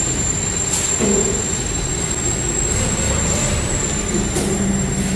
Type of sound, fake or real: real